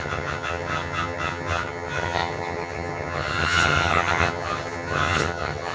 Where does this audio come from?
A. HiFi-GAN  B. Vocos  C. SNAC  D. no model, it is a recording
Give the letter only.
A